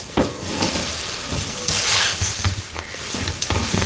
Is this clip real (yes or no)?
no